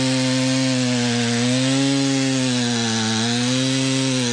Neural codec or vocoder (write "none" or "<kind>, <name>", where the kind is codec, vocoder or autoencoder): none